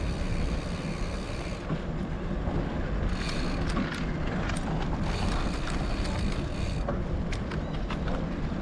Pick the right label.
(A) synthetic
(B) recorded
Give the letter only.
B